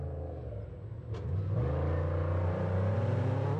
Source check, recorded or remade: recorded